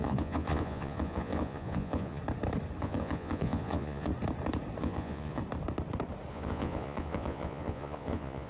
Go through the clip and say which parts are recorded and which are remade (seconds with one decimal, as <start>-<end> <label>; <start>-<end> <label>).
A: 0.0-2.2 remade; 2.2-2.8 recorded; 2.8-4.1 remade; 4.1-4.8 recorded; 4.8-5.4 remade; 5.4-6.3 recorded; 6.3-8.5 remade